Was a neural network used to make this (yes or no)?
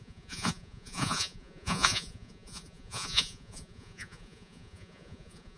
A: yes